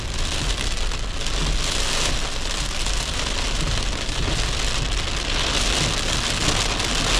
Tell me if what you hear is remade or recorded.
recorded